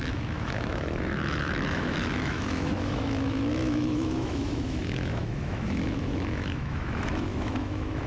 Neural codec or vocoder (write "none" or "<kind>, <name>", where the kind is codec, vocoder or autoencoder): autoencoder, DAC-VAE